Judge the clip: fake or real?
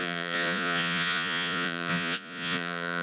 fake